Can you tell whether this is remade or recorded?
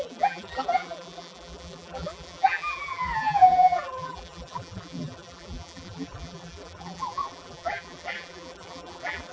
remade